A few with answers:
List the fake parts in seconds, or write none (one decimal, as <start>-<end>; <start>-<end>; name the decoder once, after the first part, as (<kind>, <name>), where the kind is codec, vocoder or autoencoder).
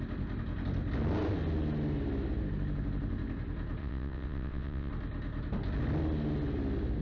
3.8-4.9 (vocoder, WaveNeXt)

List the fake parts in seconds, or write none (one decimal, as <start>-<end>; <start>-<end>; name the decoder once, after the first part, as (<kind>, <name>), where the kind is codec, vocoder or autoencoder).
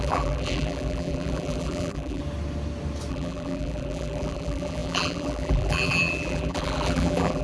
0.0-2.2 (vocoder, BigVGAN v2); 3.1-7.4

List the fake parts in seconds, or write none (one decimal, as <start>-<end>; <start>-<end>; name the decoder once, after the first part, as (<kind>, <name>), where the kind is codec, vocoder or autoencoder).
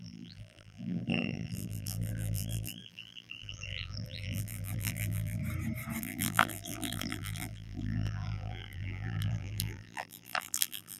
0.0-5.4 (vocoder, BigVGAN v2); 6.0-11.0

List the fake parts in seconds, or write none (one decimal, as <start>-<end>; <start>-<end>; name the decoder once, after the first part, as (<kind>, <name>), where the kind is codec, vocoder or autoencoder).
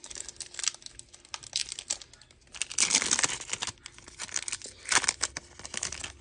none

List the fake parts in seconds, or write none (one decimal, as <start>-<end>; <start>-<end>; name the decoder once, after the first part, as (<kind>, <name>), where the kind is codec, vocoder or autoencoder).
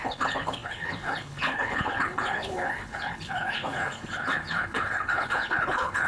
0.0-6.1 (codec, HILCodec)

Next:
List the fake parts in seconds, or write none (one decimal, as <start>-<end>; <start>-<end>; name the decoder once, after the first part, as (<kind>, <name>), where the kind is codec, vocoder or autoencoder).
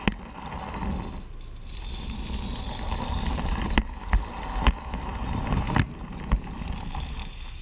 none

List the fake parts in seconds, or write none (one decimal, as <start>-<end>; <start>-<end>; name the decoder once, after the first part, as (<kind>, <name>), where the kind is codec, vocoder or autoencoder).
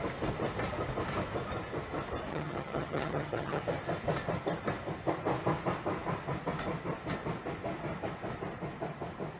2.3-3.6 (vocoder, HiFi-GAN)